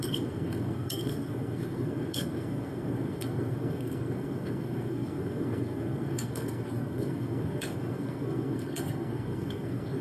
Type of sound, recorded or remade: remade